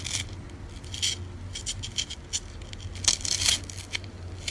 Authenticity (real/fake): real